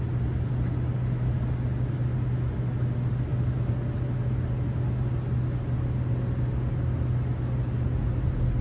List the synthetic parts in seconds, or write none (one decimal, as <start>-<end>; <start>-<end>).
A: none